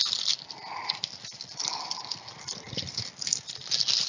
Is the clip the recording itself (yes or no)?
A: yes